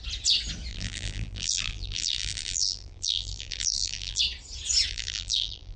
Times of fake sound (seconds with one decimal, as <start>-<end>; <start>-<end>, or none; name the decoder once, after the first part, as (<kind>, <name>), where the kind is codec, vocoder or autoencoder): 0.7-4.2 (vocoder, BigVGAN v2); 4.9-5.8